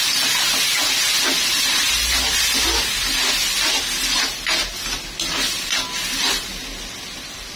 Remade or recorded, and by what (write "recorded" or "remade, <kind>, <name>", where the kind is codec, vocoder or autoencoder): recorded